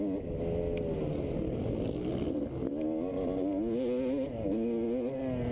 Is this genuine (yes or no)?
yes